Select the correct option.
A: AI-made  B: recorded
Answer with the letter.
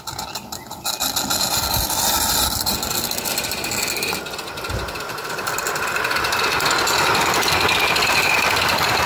B